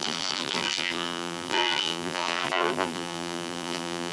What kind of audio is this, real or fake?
fake